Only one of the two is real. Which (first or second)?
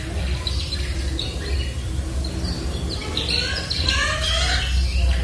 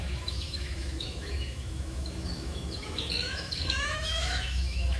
first